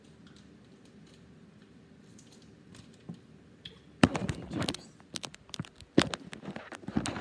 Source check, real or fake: real